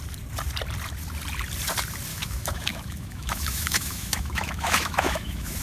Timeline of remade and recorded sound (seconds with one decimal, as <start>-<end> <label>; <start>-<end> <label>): 0.0-2.1 recorded; 2.1-5.6 remade